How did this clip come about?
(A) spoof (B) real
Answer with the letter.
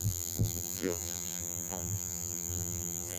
A